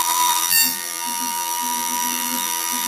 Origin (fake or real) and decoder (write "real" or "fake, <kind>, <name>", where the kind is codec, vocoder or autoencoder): fake, vocoder, BigVGAN v2